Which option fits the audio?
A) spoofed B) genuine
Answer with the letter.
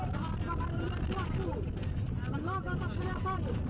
B